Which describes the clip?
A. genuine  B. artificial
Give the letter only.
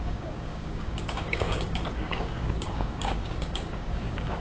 B